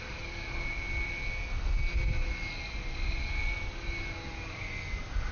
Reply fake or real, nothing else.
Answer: real